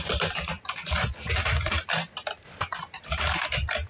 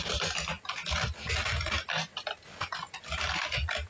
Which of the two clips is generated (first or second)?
first